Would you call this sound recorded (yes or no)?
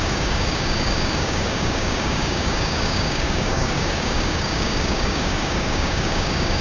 no